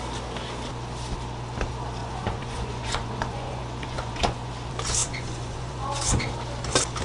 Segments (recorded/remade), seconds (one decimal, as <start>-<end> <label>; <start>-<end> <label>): 0.0-2.0 recorded; 2.0-4.5 remade; 4.5-5.0 recorded; 5.0-6.3 remade; 6.3-7.0 recorded

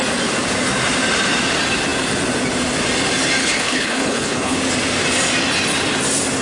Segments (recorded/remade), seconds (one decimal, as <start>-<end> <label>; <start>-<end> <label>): 0.0-3.4 recorded; 3.4-4.6 remade; 4.6-6.4 recorded